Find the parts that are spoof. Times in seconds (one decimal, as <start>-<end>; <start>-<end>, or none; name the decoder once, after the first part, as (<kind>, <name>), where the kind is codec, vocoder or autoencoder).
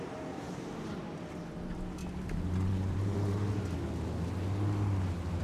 0.0-1.0 (vocoder, BigVGAN v2); 1.6-2.0; 2.7-3.4